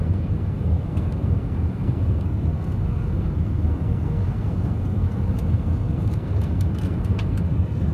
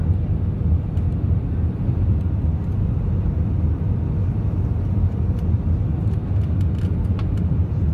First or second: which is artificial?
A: first